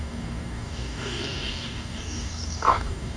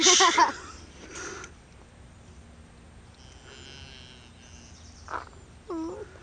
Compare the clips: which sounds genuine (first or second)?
second